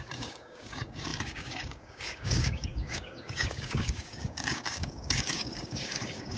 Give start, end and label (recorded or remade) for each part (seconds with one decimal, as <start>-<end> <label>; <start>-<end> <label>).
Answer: 0.0-6.4 remade